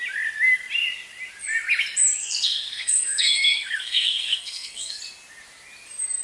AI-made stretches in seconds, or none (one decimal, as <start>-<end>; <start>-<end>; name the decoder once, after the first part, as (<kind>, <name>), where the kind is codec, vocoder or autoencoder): 2.2-5.0 (codec, SNAC)